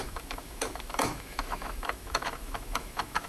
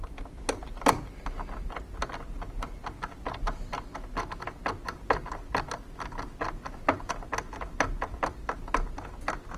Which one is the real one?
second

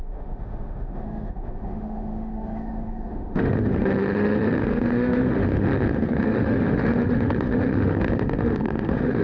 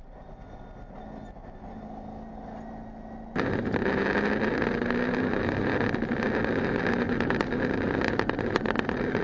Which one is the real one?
second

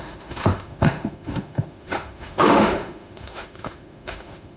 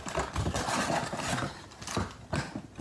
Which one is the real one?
second